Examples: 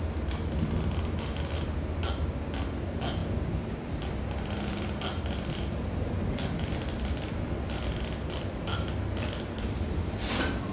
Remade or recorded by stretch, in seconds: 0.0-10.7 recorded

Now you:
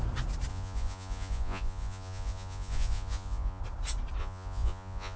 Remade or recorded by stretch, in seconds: 0.0-0.5 recorded; 0.5-3.6 remade; 3.6-4.2 recorded; 4.2-5.2 remade

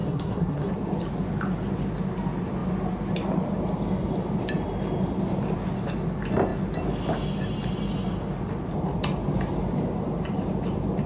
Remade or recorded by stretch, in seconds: 0.0-0.7 remade; 0.7-11.1 recorded